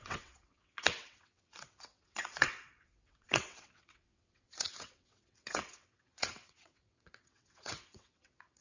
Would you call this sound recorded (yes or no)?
no